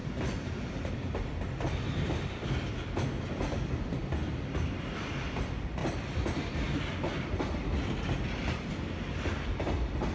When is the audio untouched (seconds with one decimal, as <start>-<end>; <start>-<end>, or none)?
3.6-4.0; 5.1-5.8; 6.5-10.1